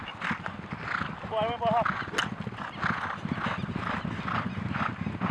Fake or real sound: real